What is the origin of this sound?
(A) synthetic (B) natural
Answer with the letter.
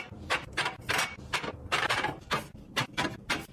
A